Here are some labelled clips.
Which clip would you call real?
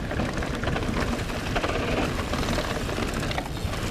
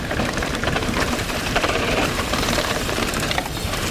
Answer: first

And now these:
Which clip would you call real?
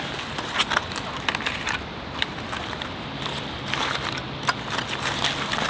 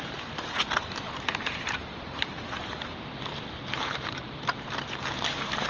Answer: first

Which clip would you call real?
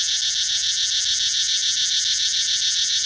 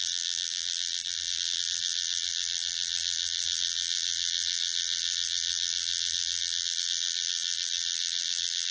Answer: first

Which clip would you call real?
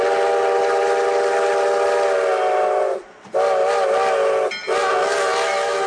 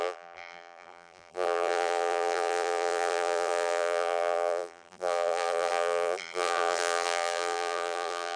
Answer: first